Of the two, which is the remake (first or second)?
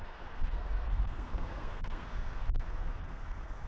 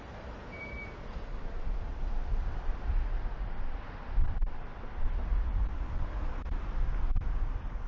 first